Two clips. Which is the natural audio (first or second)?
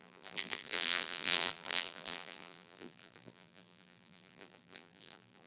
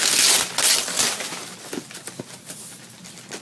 second